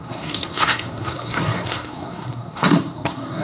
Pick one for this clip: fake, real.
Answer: fake